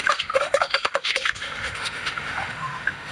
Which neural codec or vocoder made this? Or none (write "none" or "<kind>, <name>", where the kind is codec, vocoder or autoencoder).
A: autoencoder, DAC-VAE